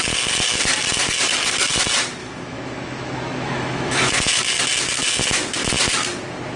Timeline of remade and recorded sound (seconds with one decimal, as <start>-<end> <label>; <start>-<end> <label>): 0.0-2.2 recorded; 2.2-4.4 remade; 4.4-6.6 recorded